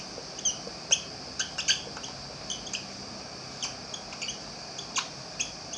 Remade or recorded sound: recorded